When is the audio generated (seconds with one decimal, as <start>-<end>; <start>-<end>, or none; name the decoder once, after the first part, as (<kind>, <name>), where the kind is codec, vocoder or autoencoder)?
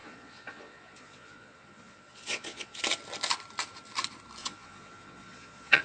0.0-2.8 (vocoder, Vocos); 4.4-5.8